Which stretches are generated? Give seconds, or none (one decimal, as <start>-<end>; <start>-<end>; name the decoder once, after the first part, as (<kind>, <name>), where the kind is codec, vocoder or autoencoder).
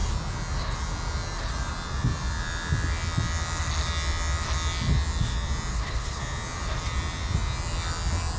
5.7-6.2 (codec, HILCodec)